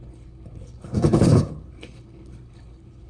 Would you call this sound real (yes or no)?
no